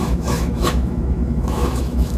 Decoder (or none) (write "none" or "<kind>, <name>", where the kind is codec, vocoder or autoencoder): autoencoder, DAC-VAE